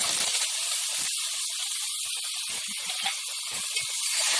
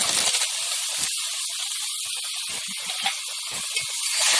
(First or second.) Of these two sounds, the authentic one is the second